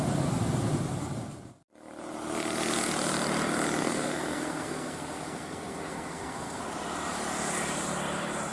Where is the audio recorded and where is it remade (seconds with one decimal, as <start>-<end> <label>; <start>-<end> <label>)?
0.0-3.8 recorded; 3.8-6.6 remade; 6.6-8.5 recorded